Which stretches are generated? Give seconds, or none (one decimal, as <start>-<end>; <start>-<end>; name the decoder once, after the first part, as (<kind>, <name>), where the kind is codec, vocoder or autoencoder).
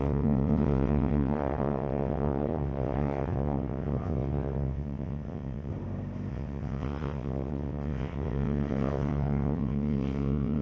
0.0-5.7 (vocoder, WaveNeXt); 6.3-10.6